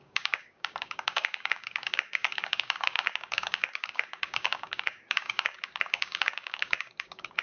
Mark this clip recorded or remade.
remade